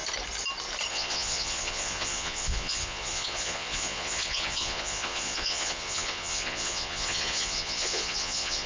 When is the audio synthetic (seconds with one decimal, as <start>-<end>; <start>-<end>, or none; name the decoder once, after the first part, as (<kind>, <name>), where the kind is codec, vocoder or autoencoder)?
0.9-8.7 (vocoder, Vocos)